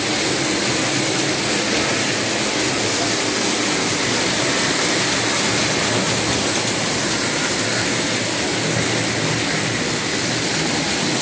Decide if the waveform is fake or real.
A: real